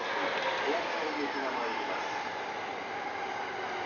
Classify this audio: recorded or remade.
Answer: recorded